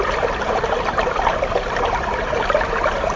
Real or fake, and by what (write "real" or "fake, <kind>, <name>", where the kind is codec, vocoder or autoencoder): fake, vocoder, BigVGAN v2